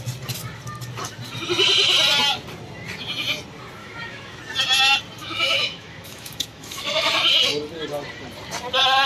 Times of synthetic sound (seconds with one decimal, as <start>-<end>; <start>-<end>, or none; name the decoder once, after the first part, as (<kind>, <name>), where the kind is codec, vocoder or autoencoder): 3.8-4.4 (autoencoder, DAC-VAE); 5.2-7.1